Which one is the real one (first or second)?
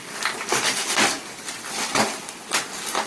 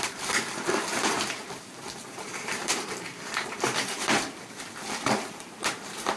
first